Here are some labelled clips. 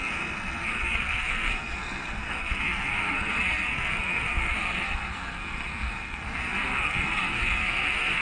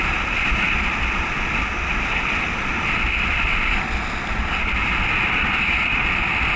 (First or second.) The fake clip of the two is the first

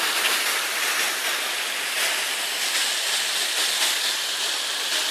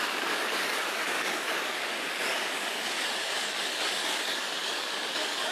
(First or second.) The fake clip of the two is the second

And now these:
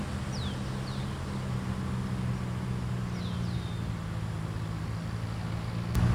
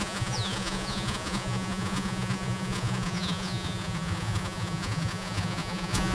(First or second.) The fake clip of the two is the second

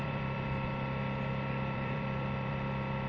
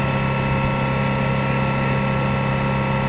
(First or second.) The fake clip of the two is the first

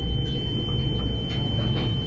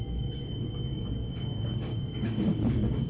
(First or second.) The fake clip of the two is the second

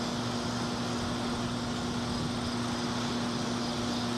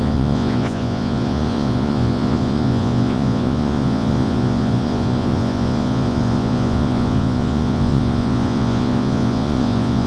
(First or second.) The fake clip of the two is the second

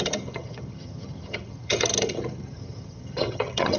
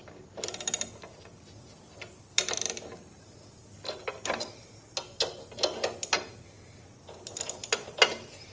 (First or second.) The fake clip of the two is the first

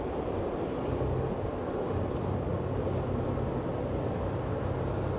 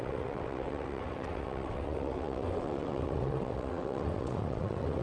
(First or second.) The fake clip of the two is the second